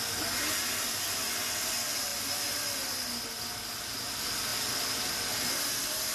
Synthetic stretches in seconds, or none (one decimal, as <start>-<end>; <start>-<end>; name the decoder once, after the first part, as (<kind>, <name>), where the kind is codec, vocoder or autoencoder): none